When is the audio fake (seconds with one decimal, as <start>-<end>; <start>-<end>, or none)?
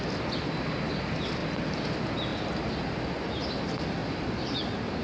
4.0-5.0